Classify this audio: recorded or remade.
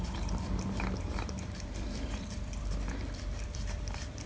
remade